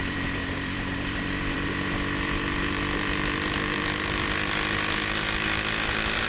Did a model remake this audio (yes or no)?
yes